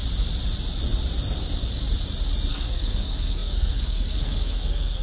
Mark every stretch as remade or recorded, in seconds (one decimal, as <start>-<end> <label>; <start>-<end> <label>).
0.0-2.5 recorded; 2.5-5.0 remade